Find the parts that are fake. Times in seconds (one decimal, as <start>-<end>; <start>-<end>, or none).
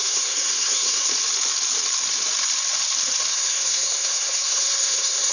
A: 0.0-1.1; 3.3-5.3